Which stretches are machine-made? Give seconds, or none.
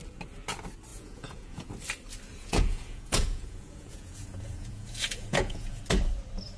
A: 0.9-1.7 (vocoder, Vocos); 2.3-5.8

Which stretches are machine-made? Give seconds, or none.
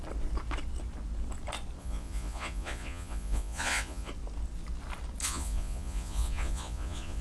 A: 1.8-4.1 (vocoder, Vocos); 5.2-7.2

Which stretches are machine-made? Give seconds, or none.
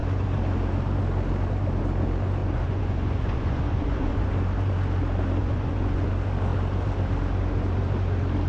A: 2.4-4.3 (vocoder, Vocos); 5.4-6.1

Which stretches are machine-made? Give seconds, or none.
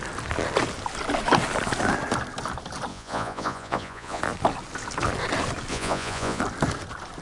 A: 2.9-4.2 (vocoder, Vocos); 5.7-6.4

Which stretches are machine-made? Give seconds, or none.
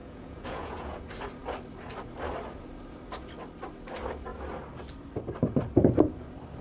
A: 0.0-1.0 (vocoder, Vocos)